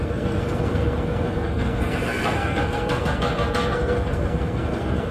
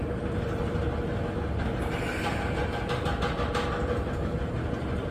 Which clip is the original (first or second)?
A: second